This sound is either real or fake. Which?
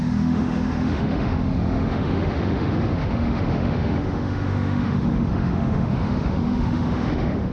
fake